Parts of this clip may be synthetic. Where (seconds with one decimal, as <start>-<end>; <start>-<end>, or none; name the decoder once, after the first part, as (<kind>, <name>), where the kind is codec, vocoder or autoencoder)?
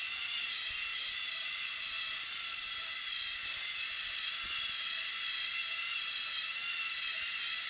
none